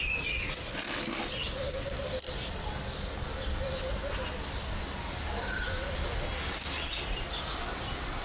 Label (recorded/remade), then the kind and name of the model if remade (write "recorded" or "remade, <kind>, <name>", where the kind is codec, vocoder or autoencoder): recorded